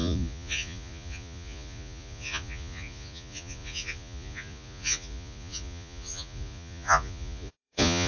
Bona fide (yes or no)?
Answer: no